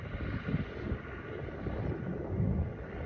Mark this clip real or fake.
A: real